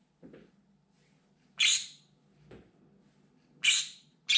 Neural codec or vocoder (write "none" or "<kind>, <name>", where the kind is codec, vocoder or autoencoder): none